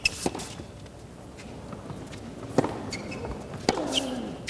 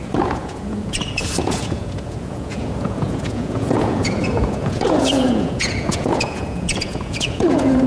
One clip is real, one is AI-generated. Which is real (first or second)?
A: first